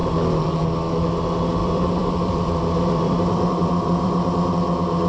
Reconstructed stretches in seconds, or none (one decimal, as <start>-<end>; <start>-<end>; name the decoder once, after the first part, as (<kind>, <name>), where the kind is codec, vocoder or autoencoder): 1.6-4.5 (vocoder, BigVGAN v2)